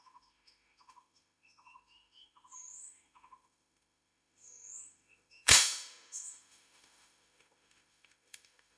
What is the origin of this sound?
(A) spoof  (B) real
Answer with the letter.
A